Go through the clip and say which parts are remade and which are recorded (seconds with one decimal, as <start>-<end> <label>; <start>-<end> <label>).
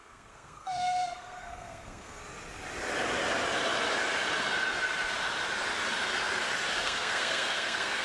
0.0-2.2 remade; 2.2-6.7 recorded; 6.7-8.0 remade